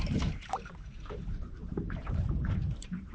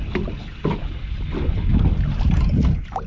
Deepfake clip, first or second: first